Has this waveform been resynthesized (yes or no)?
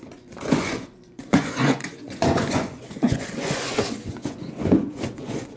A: yes